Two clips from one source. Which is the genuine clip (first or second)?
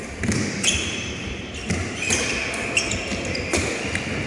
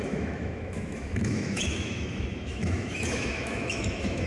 first